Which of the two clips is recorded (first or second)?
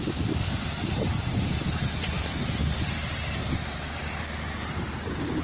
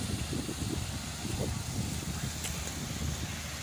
second